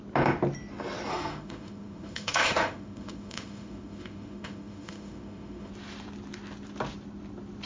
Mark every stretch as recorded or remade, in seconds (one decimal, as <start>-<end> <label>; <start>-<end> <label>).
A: 0.0-1.1 recorded; 1.1-5.7 remade; 5.7-7.7 recorded

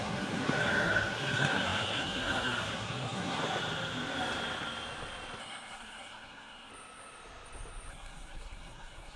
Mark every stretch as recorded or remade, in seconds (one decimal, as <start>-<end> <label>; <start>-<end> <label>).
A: 0.0-3.4 remade; 3.4-5.4 recorded; 5.4-6.7 remade; 6.7-7.9 recorded; 7.9-9.2 remade

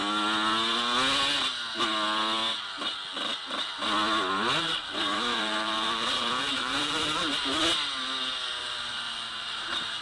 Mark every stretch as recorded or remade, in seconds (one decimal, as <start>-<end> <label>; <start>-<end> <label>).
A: 0.0-4.6 recorded; 4.6-7.6 remade; 7.6-8.6 recorded; 8.6-10.0 remade

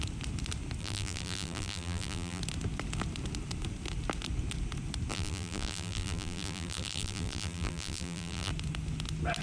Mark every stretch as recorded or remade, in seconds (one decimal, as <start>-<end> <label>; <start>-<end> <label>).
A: 0.0-0.8 recorded; 0.8-2.4 remade; 2.4-5.1 recorded; 5.1-8.5 remade; 8.5-9.4 recorded

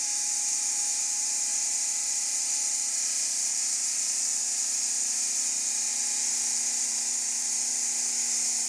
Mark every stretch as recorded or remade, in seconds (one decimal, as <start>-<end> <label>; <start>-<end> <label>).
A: 0.0-1.5 remade; 1.5-4.4 recorded; 4.4-5.9 remade; 5.9-6.8 recorded; 6.8-7.7 remade; 7.7-8.7 recorded